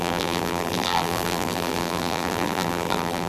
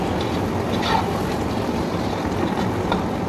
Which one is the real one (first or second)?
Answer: second